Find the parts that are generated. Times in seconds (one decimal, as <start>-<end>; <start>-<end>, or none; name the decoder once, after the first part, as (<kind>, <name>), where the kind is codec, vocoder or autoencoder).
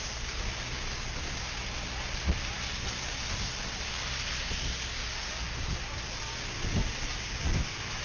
none